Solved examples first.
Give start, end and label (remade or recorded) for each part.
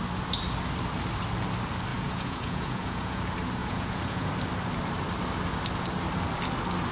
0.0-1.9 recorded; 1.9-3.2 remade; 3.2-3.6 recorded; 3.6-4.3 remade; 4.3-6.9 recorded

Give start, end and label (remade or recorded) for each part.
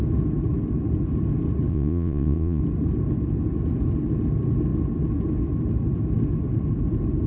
0.0-1.7 recorded; 1.7-2.6 remade; 2.6-7.3 recorded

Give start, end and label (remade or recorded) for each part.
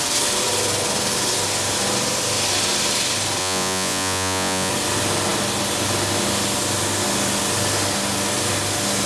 0.0-3.4 recorded; 3.4-4.7 remade; 4.7-9.1 recorded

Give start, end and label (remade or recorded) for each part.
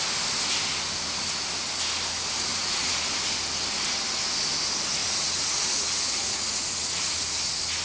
0.0-2.5 recorded; 2.5-3.0 remade; 3.0-5.0 recorded; 5.0-7.3 remade; 7.3-7.8 recorded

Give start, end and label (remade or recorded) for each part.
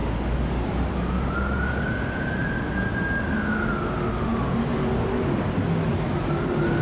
0.0-6.8 recorded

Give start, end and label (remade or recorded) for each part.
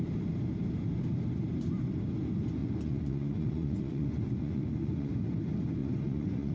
0.0-2.6 recorded; 2.6-5.1 remade; 5.1-5.8 recorded; 5.8-6.5 remade